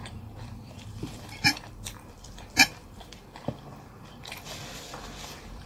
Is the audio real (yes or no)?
no